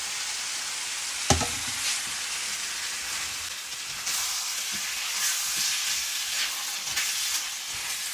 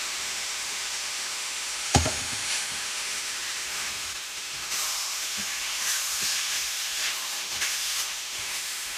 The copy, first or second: second